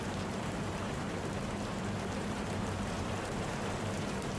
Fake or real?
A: fake